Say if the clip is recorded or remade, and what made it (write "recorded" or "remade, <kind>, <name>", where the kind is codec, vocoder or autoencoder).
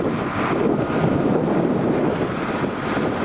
recorded